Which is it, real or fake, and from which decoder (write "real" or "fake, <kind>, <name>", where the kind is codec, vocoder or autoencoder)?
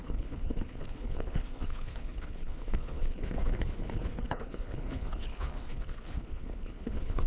fake, codec, HILCodec